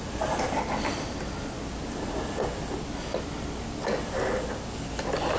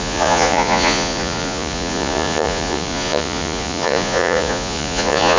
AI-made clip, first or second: second